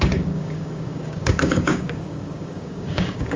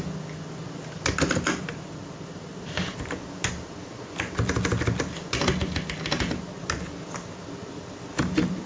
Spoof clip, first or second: first